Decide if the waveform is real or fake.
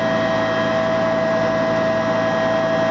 real